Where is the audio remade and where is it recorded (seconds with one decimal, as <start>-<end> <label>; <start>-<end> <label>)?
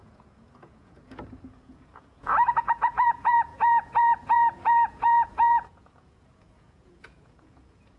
0.0-8.0 remade